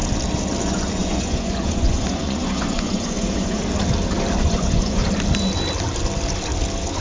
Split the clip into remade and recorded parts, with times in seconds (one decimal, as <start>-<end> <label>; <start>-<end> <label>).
0.0-0.6 recorded; 0.6-3.6 remade; 3.6-4.4 recorded; 4.4-5.0 remade; 5.0-7.0 recorded